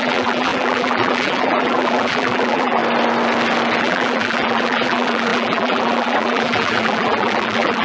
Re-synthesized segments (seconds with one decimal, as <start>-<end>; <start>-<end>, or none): 0.0-2.8; 3.8-7.8